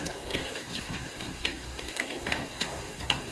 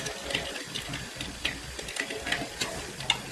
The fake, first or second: first